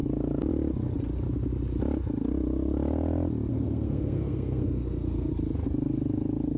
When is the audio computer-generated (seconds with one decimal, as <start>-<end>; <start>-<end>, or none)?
3.5-5.3